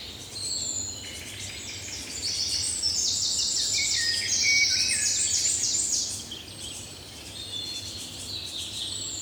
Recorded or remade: recorded